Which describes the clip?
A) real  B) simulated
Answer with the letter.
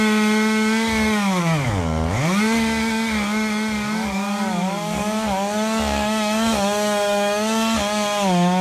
B